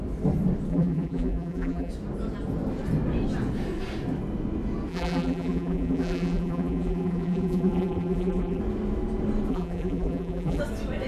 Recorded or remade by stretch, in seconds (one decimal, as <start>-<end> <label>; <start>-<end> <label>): 0.0-0.7 recorded; 0.7-1.9 remade; 1.9-4.9 recorded; 4.9-8.6 remade; 8.6-9.5 recorded; 9.5-10.6 remade; 10.6-11.1 recorded